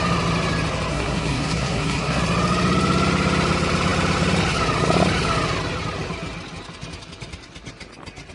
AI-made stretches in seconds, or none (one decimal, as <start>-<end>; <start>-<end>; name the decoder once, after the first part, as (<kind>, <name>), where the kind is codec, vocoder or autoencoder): 0.9-2.2 (codec, SNAC)